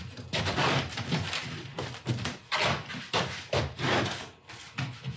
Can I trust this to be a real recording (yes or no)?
no